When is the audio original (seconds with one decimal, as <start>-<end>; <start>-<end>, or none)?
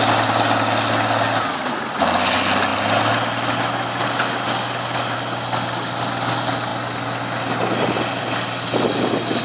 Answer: 0.0-9.4